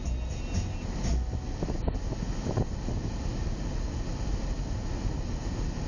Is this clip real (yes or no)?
yes